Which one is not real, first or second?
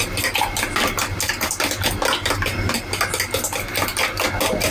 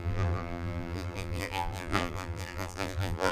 second